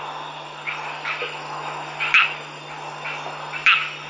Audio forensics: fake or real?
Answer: real